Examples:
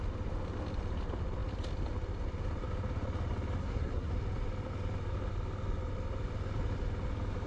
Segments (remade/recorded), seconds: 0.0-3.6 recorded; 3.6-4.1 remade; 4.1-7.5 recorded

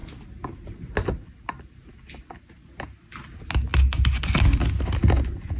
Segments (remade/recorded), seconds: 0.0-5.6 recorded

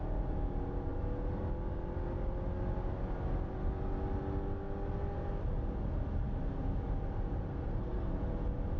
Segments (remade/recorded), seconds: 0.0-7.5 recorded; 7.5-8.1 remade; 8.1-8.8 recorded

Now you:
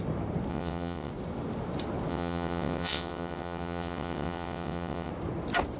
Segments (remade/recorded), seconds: 0.0-0.5 recorded; 0.5-1.1 remade; 1.1-2.1 recorded; 2.1-5.1 remade; 5.1-5.8 recorded

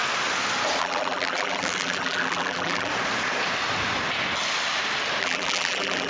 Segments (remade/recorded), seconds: 0.0-0.8 recorded; 0.8-2.9 remade; 2.9-5.2 recorded; 5.2-6.1 remade

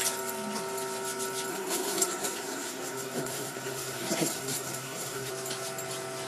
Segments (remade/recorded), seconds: 0.0-1.5 recorded; 1.5-5.3 remade; 5.3-6.3 recorded

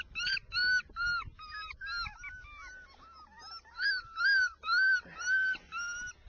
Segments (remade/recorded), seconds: 0.0-6.3 recorded

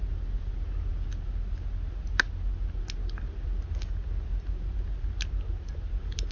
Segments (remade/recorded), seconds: 0.0-6.3 recorded